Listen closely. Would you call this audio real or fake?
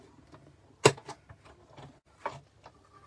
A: real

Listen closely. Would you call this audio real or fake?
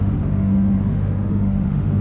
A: fake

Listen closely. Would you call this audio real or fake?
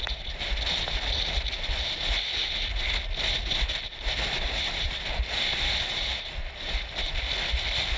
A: real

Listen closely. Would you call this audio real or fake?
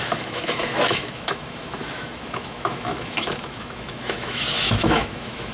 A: fake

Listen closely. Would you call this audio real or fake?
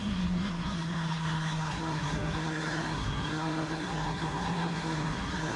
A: fake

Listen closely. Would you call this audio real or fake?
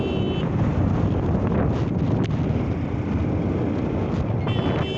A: real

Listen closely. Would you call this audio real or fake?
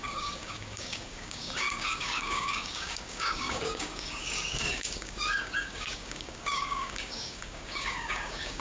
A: fake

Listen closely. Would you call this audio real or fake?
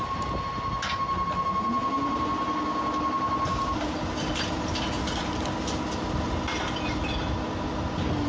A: real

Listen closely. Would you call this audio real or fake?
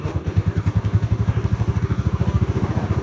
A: fake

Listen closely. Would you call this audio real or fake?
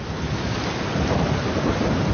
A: real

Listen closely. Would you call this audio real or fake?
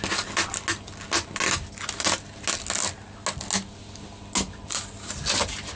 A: real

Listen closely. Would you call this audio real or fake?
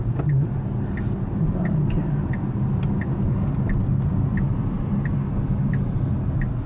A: real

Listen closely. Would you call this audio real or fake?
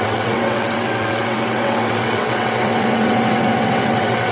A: fake